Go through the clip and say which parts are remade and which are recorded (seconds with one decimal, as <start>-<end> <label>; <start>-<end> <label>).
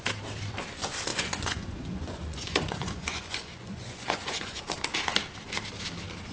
0.0-1.1 recorded; 1.1-4.6 remade; 4.6-6.3 recorded